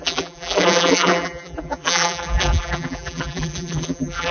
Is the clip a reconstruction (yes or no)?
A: yes